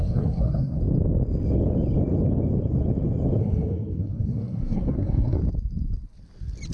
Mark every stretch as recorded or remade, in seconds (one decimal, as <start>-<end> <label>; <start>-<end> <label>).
0.0-0.8 remade; 0.8-3.4 recorded; 3.4-5.4 remade; 5.4-6.7 recorded